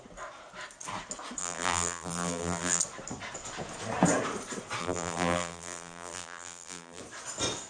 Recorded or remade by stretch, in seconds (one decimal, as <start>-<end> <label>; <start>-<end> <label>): 0.0-1.4 recorded; 1.4-2.8 remade; 2.8-4.8 recorded; 4.8-7.0 remade; 7.0-7.7 recorded